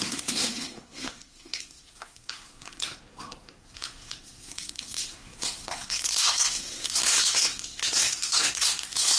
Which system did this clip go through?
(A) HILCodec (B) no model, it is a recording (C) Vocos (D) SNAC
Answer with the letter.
D